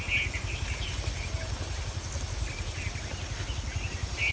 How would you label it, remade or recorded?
recorded